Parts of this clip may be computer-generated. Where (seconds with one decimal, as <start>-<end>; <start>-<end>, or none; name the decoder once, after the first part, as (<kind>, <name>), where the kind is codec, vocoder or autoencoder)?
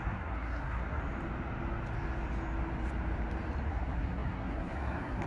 0.0-1.0 (codec, SNAC); 3.7-5.3